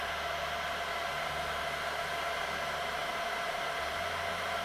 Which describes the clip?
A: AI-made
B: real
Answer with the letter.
B